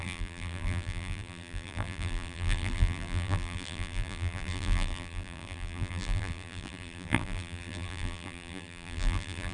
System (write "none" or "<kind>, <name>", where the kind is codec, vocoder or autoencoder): vocoder, BigVGAN v2